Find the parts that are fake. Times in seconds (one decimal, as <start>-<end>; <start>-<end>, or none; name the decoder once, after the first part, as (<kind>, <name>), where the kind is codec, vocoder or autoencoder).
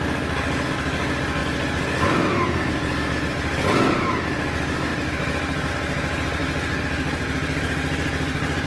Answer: 0.0-1.4 (vocoder, BigVGAN v2); 2.7-6.4; 7.6-8.7